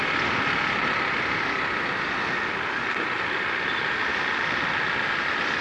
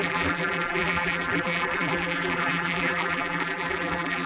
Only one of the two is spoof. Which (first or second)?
second